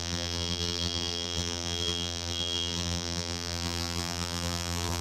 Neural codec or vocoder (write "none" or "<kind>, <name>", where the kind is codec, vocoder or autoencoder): vocoder, BigVGAN v2